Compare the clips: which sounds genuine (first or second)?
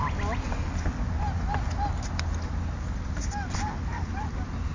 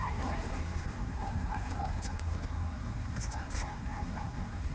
first